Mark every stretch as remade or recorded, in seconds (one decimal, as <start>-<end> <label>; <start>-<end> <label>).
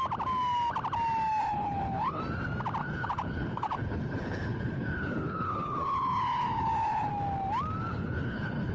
0.0-1.4 recorded; 1.4-2.2 remade; 2.2-2.8 recorded; 2.8-7.1 remade; 7.1-7.9 recorded; 7.9-8.7 remade